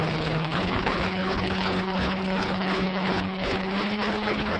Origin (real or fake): fake